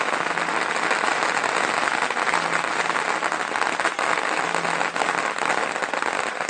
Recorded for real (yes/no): yes